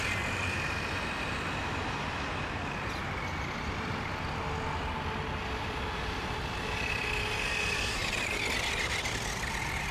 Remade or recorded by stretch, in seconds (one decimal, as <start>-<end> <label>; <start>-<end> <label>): 0.0-9.9 recorded